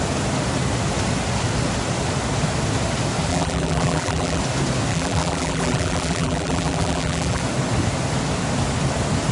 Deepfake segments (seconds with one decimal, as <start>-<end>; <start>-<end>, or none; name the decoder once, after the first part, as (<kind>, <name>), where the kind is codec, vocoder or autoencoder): 3.3-4.4 (vocoder, BigVGAN v2); 4.9-7.4